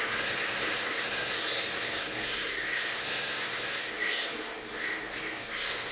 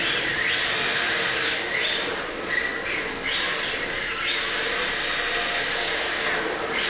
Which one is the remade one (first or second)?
first